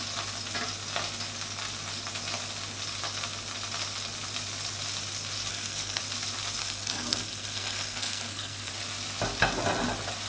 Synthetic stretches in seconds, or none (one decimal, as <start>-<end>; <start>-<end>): 5.5-6.0; 6.6-8.7